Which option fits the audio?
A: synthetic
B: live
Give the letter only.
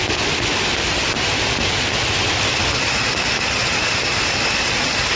B